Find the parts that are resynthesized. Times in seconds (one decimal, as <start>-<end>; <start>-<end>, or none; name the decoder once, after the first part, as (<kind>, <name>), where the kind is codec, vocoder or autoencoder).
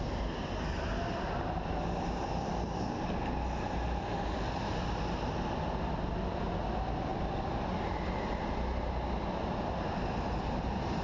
none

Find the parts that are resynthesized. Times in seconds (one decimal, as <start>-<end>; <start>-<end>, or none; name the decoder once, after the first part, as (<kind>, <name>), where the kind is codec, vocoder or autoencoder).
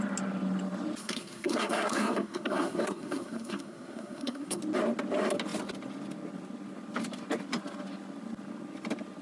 1.0-4.6 (codec, SNAC)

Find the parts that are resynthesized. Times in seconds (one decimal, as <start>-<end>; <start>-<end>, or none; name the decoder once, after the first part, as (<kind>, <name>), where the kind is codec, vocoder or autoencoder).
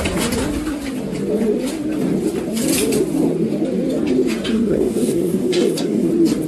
4.5-6.1 (codec, SNAC)